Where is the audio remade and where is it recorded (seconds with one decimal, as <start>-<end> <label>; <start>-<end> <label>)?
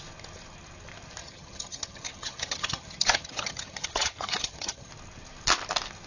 0.0-1.2 recorded; 1.2-4.9 remade; 4.9-6.1 recorded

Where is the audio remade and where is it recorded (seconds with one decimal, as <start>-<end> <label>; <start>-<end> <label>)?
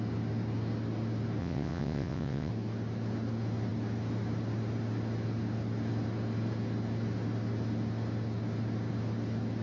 0.0-1.4 recorded; 1.4-2.5 remade; 2.5-9.6 recorded